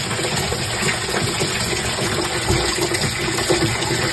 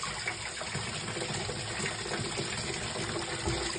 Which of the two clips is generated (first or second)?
first